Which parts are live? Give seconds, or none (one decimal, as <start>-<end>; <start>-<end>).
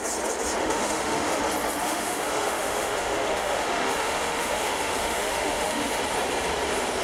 0.0-0.6; 1.4-1.8; 6.0-7.0